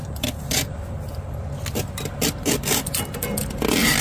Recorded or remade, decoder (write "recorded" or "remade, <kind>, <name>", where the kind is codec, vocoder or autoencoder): recorded